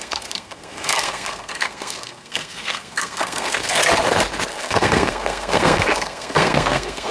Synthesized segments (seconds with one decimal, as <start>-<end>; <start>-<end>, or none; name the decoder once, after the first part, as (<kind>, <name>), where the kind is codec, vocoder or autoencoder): 0.0-3.8 (codec, SNAC); 4.5-7.1